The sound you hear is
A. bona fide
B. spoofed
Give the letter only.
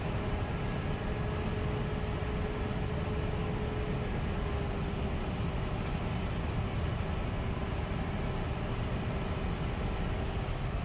A